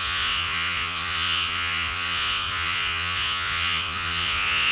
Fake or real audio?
fake